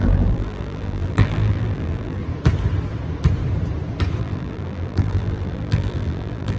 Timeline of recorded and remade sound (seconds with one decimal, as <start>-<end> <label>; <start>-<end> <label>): 0.0-2.2 remade; 2.2-4.2 recorded; 4.2-6.6 remade